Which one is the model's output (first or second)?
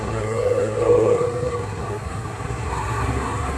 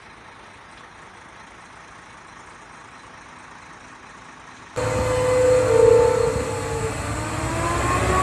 first